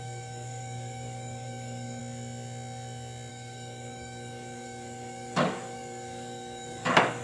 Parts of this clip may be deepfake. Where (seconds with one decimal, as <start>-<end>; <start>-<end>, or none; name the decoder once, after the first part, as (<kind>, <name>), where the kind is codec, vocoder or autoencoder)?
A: 0.0-2.0 (codec, DAC); 3.3-7.2